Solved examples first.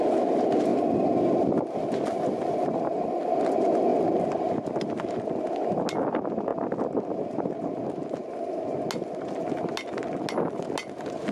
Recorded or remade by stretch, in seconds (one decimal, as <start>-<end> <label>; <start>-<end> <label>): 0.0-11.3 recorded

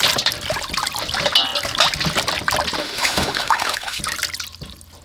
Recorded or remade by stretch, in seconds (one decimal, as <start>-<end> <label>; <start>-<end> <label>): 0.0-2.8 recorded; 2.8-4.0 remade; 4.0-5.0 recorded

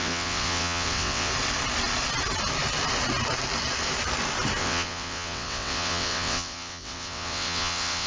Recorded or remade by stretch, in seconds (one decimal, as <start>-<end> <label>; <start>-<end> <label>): 0.0-1.3 remade; 1.3-4.6 recorded; 4.6-8.1 remade